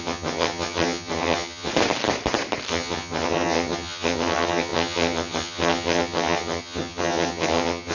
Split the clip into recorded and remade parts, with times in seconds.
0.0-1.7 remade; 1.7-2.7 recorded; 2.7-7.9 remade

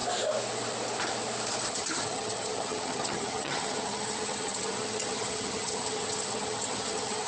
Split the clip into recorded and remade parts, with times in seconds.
0.0-1.7 recorded; 1.7-7.3 remade

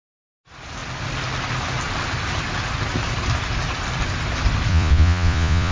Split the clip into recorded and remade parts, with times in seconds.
0.0-4.7 recorded; 4.7-5.7 remade

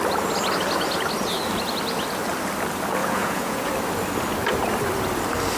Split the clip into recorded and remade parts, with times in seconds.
0.0-3.0 recorded; 3.0-3.7 remade; 3.7-5.6 recorded

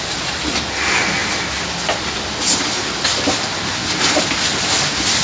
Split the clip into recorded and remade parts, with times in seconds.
0.0-5.2 recorded

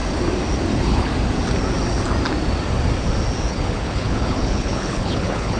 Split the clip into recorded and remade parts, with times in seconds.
0.0-0.7 recorded; 0.7-1.1 remade; 1.1-3.5 recorded; 3.5-5.6 remade

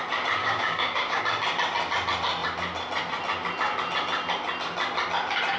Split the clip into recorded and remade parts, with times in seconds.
0.0-0.4 recorded; 0.4-1.2 remade; 1.2-5.6 recorded

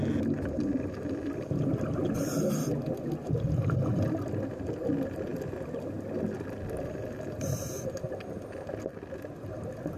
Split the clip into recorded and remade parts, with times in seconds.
0.0-10.0 recorded